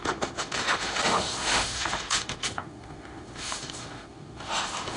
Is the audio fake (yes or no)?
yes